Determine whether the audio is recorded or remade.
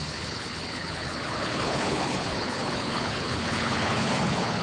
remade